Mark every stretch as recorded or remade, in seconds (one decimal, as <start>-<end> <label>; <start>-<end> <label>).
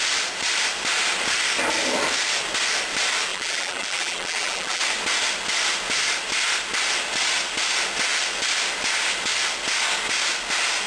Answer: 0.0-3.3 recorded; 3.3-4.8 remade; 4.8-10.9 recorded